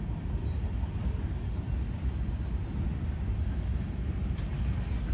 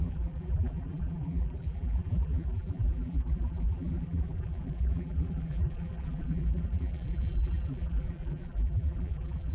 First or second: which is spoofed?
second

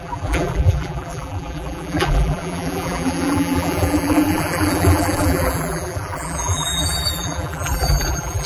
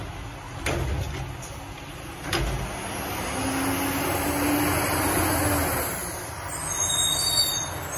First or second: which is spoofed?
first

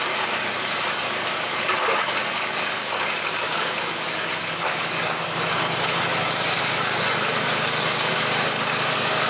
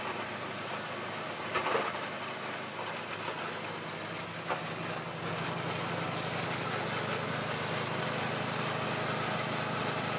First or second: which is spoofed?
first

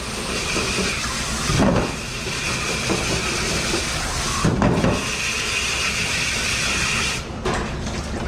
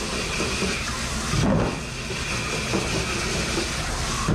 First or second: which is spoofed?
first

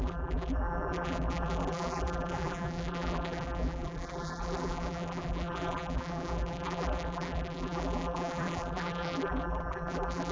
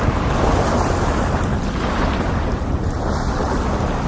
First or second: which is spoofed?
first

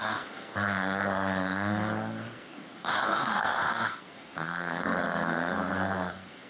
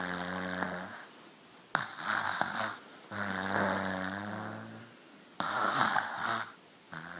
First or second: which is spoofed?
first